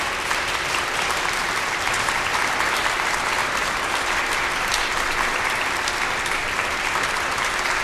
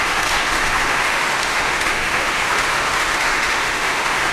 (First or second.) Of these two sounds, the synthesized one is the second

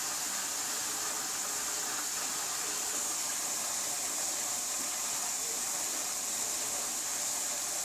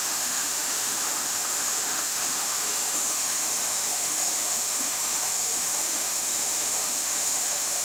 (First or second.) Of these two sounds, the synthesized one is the second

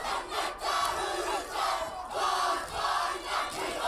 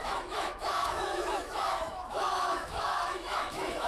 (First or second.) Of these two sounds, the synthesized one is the second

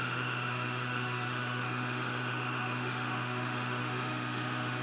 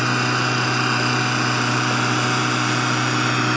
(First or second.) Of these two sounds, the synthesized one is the first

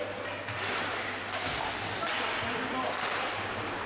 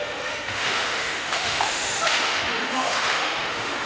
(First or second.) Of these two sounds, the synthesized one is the second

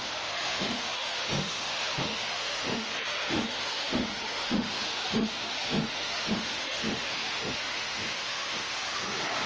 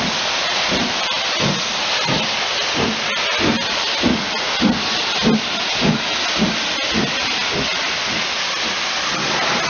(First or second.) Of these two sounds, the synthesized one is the first